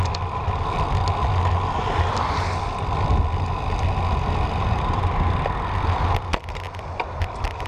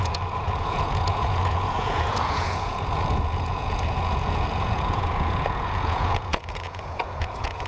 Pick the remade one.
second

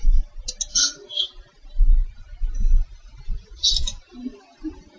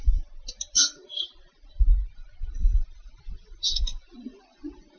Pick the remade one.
second